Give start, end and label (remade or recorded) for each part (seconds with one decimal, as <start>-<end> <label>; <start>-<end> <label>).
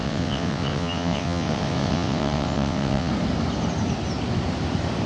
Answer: 0.0-3.1 remade; 3.1-5.1 recorded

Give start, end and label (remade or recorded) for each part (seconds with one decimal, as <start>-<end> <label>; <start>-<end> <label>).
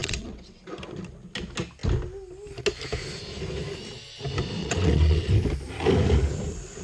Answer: 0.0-0.6 remade; 0.6-4.6 recorded; 4.6-5.3 remade; 5.3-6.8 recorded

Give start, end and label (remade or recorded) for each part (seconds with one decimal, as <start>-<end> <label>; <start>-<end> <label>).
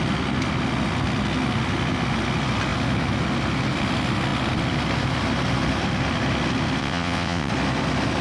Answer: 0.0-6.8 recorded; 6.8-7.5 remade; 7.5-8.2 recorded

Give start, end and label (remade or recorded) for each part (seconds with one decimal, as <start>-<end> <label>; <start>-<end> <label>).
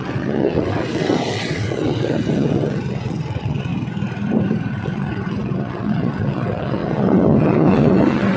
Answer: 0.0-3.7 remade; 3.7-4.7 recorded; 4.7-8.4 remade